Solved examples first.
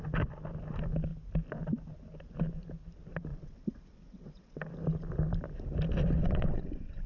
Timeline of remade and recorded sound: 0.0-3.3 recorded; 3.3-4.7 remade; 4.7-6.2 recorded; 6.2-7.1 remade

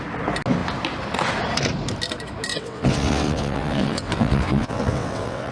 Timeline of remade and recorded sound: 0.0-2.5 recorded; 2.5-5.5 remade

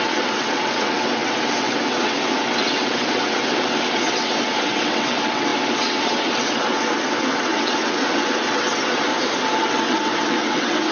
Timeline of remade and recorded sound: 0.0-9.1 remade; 9.1-9.6 recorded; 9.6-10.9 remade

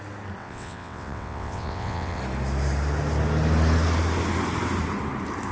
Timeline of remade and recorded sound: 0.0-0.4 recorded; 0.4-2.2 remade; 2.2-5.5 recorded

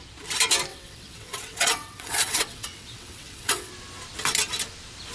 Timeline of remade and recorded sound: 0.0-0.7 recorded; 0.7-3.7 remade; 3.7-5.1 recorded

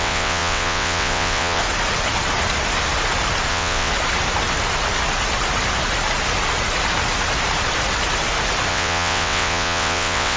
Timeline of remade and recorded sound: 0.0-1.6 remade; 1.6-3.5 recorded; 3.5-3.9 remade; 3.9-8.7 recorded; 8.7-10.4 remade

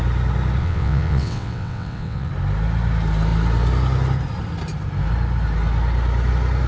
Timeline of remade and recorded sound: 0.0-0.6 recorded; 0.6-2.3 remade; 2.3-6.7 recorded

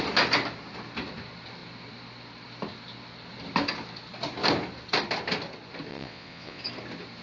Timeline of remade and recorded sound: 0.0-5.9 recorded; 5.9-6.6 remade; 6.6-7.2 recorded